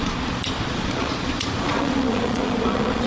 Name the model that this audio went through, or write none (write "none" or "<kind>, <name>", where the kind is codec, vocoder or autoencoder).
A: vocoder, Vocos